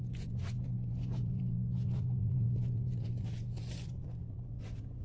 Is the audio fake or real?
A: fake